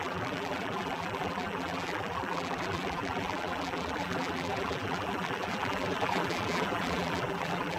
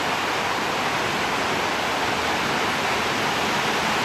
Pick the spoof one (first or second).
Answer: first